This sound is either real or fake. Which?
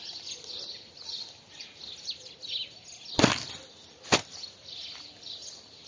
real